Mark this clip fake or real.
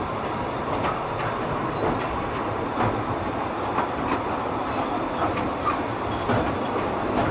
real